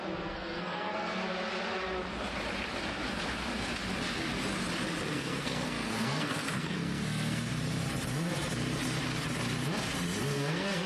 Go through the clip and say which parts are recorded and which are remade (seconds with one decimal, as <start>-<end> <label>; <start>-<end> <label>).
0.0-1.2 remade; 1.2-5.1 recorded; 5.1-7.5 remade; 7.5-10.2 recorded; 10.2-10.9 remade